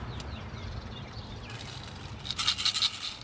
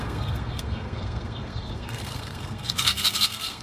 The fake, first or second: second